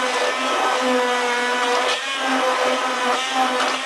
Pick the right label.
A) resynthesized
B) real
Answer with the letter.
B